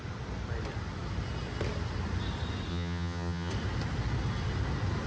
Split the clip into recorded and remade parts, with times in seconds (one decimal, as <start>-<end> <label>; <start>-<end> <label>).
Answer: 0.0-2.7 recorded; 2.7-3.5 remade; 3.5-5.1 recorded